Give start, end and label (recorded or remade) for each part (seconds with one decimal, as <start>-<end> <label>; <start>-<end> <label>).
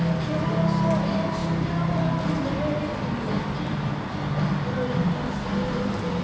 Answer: 0.0-6.2 recorded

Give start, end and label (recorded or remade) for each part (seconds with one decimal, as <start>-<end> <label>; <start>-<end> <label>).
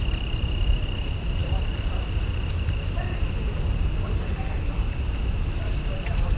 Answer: 0.0-4.3 remade; 4.3-5.9 recorded; 5.9-6.4 remade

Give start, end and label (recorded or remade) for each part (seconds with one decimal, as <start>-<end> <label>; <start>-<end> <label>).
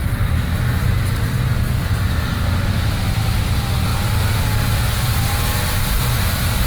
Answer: 0.0-6.7 recorded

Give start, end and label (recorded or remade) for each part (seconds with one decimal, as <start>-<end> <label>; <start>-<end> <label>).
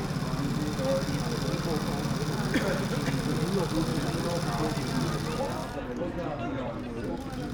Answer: 0.0-3.9 recorded; 3.9-4.9 remade; 4.9-5.6 recorded; 5.6-6.4 remade; 6.4-7.5 recorded